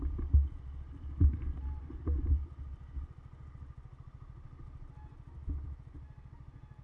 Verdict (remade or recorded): recorded